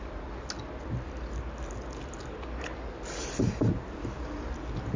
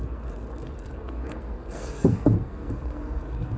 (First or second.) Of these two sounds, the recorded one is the first